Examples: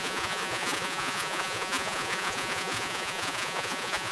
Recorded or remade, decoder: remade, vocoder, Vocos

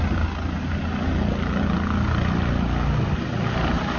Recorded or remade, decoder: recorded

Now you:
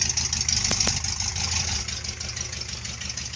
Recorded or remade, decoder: recorded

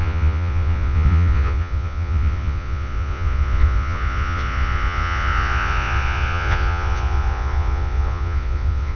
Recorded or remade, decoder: remade, vocoder, Vocos